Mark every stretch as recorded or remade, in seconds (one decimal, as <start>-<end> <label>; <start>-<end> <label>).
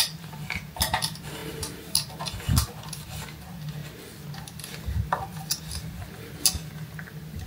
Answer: 0.0-7.5 recorded